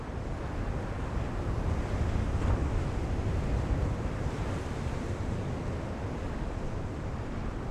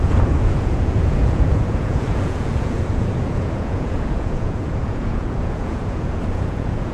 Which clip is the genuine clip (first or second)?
first